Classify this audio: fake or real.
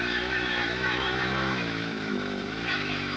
fake